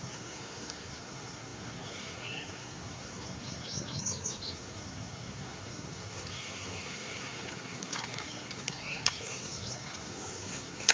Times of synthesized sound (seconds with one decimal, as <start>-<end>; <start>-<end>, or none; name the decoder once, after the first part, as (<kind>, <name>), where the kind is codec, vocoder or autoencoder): 0.0-10.9 (codec, SNAC)